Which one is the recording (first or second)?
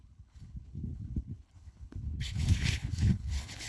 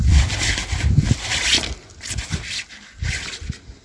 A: second